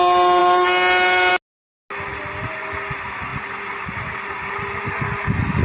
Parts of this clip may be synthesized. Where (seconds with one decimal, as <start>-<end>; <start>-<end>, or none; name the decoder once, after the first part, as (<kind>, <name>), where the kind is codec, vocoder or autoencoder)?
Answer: none